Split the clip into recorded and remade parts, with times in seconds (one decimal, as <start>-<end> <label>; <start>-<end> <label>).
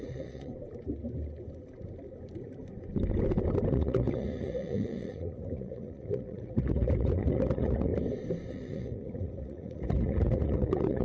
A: 0.0-0.5 remade; 0.5-3.7 recorded; 3.7-7.9 remade; 7.9-8.5 recorded; 8.5-11.0 remade